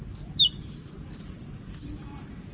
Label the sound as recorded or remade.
recorded